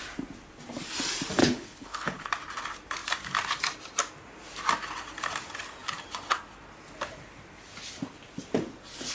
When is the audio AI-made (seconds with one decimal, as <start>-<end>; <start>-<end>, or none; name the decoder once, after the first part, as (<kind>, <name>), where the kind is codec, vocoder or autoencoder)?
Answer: 1.4-2.3 (codec, HILCodec)

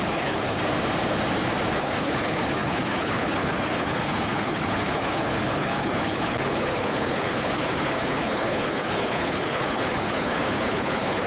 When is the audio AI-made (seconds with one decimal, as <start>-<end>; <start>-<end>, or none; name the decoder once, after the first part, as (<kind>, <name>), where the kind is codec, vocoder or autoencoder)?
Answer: 0.0-0.6 (codec, HILCodec); 1.8-11.3

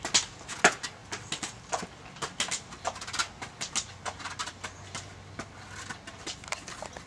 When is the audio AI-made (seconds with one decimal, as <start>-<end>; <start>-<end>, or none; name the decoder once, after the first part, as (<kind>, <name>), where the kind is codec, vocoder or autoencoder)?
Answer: none